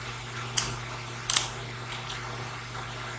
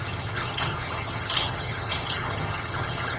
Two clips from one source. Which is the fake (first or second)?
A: second